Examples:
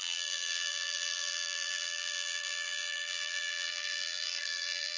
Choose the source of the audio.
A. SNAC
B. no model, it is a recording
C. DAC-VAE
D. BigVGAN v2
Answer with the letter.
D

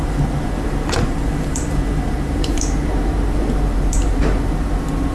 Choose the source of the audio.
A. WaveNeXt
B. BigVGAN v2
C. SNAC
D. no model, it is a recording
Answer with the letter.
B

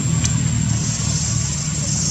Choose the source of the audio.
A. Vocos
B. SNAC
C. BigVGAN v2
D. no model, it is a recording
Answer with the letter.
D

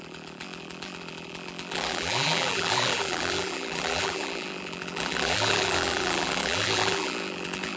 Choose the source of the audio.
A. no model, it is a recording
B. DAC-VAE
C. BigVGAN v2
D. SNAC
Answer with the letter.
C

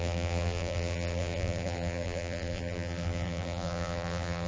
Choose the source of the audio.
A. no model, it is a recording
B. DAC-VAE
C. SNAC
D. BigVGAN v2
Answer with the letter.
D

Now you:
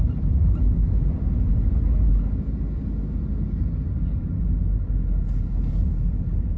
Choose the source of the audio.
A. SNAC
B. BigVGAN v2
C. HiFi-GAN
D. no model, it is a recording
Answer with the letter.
D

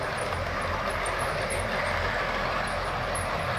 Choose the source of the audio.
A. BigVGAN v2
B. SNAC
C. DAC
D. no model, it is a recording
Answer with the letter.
D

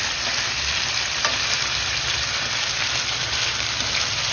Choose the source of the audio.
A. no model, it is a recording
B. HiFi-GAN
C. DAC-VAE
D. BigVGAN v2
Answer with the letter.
D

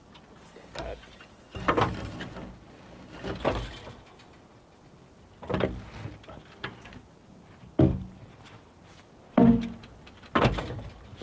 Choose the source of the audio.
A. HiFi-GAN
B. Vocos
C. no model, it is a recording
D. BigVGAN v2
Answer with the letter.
C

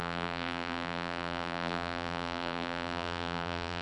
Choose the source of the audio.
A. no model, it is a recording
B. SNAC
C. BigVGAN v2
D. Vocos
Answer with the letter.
C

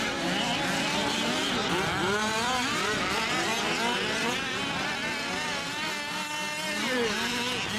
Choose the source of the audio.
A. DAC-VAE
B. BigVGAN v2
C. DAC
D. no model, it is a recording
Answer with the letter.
D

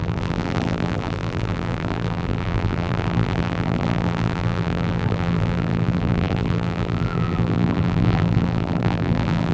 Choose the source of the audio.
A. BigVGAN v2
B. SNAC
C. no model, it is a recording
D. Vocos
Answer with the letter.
A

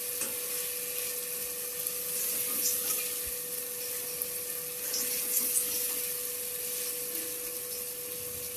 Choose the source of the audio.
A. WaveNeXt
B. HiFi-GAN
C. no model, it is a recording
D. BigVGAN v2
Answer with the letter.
C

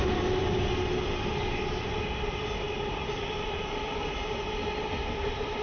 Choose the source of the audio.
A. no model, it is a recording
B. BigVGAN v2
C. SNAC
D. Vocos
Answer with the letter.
A